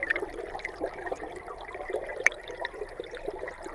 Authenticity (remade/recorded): recorded